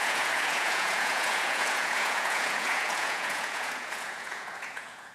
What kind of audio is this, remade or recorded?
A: remade